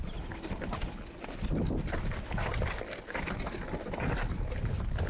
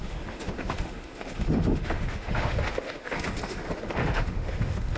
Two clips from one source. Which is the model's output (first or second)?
second